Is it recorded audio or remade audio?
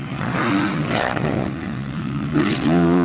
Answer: remade